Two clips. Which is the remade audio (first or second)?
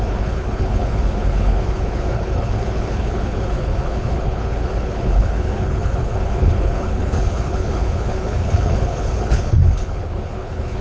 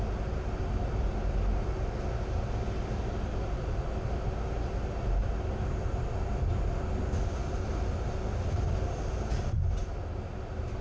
first